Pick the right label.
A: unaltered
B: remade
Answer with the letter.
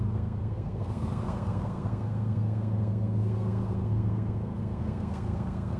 B